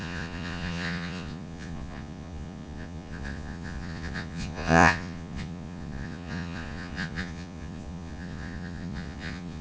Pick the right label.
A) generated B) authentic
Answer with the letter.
A